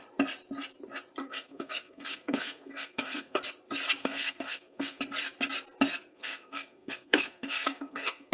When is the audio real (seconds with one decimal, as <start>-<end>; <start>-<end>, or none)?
0.0-1.2; 3.4-4.0; 5.0-6.1